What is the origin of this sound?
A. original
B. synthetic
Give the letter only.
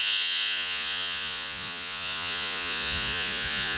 B